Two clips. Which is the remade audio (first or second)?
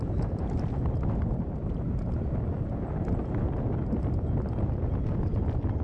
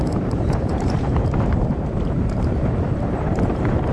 second